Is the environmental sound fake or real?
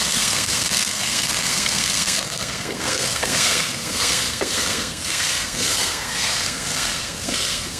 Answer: fake